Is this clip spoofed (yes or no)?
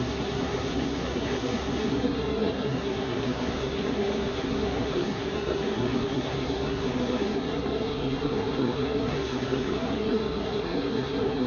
yes